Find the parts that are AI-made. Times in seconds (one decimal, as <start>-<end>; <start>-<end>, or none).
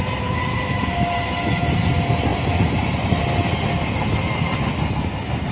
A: none